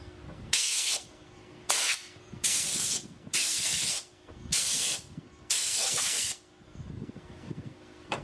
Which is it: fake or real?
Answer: fake